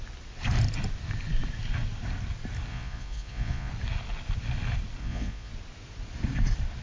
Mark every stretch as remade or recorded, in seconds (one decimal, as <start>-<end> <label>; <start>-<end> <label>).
0.0-2.7 recorded; 2.7-3.7 remade; 3.7-5.0 recorded; 5.0-5.5 remade; 5.5-6.8 recorded